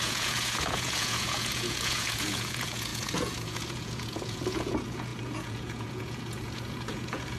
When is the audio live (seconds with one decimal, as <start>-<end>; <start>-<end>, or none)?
none